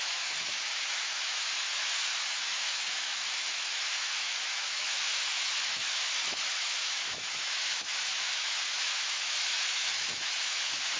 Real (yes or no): no